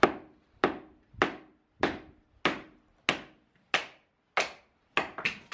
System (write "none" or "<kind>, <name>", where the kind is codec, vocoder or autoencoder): none